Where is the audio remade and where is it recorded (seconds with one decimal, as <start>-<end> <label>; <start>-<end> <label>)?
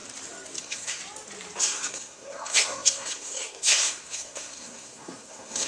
0.0-0.6 recorded; 0.6-1.0 remade; 1.0-1.6 recorded; 1.6-5.7 remade